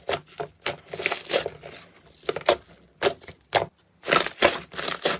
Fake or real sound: real